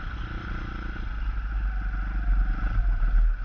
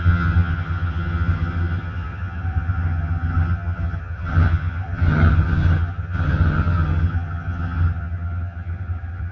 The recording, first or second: first